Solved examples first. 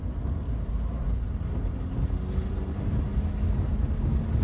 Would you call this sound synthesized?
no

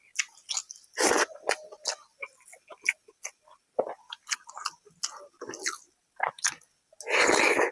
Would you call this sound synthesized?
no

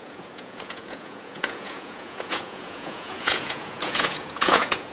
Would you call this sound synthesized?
yes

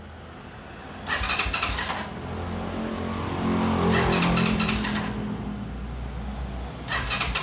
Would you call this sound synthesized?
no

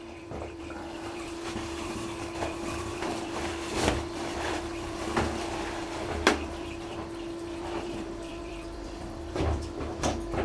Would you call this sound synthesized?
yes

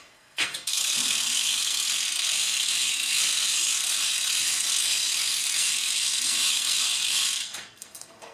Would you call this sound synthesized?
yes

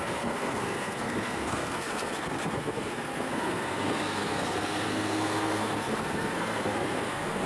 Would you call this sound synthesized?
yes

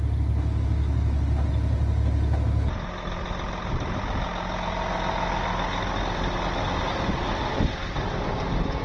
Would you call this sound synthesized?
no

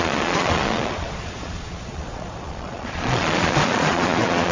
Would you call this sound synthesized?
yes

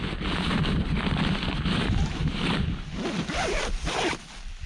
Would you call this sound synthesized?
no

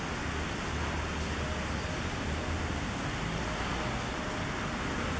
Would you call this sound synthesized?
no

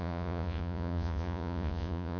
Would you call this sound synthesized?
yes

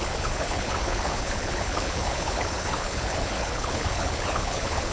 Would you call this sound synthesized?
yes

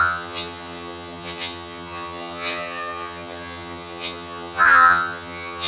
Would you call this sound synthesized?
yes